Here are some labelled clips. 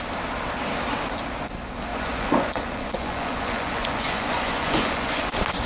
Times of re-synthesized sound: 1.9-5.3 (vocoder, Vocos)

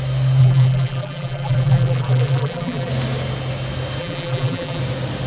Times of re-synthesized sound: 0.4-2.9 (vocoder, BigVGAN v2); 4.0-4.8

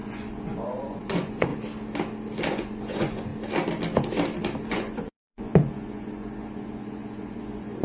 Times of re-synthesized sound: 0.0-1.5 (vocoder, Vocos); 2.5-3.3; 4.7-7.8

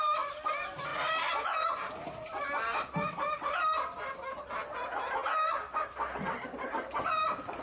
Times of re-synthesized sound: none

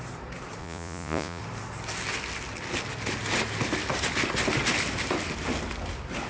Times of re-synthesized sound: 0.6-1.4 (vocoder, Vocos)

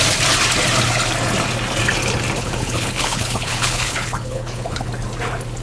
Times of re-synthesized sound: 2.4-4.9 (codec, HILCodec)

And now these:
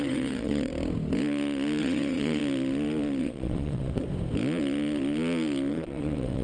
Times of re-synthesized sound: 0.0-0.7 (vocoder, WaveNeXt); 1.8-2.4; 3.2-4.0; 5.7-6.4